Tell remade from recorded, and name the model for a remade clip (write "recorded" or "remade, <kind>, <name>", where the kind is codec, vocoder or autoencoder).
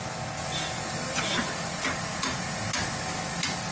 recorded